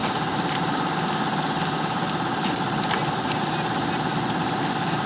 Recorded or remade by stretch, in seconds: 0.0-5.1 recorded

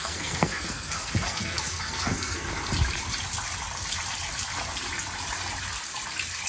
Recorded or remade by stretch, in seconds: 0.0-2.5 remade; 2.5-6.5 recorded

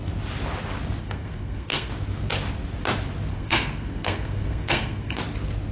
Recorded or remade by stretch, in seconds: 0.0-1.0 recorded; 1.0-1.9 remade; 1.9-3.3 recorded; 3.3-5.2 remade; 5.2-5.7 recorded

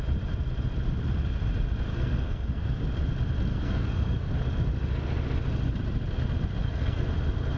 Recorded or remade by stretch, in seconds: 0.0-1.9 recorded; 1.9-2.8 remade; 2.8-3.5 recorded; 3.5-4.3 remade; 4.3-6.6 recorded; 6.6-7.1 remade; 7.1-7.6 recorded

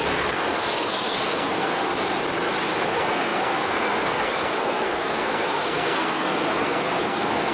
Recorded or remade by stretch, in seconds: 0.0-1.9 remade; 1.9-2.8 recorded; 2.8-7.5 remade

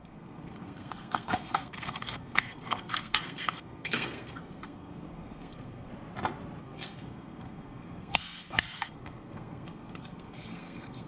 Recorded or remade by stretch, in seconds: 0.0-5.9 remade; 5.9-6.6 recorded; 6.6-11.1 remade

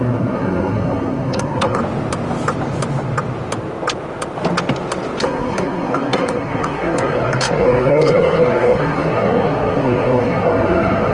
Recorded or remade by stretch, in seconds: 0.0-1.8 remade; 1.8-5.2 recorded; 5.2-11.1 remade